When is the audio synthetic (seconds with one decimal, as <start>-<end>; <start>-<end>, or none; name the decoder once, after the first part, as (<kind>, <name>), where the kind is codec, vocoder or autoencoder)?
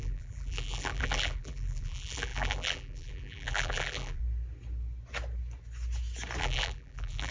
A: 0.0-4.2 (vocoder, BigVGAN v2); 6.4-7.3